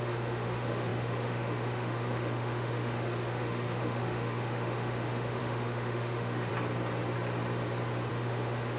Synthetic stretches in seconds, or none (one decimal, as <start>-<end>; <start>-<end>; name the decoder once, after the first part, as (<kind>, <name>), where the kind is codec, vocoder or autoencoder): 0.0-6.5 (autoencoder, DAC-VAE); 8.1-8.8